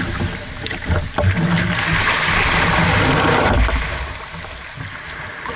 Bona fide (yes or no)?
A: yes